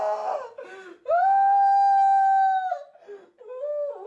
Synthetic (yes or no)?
no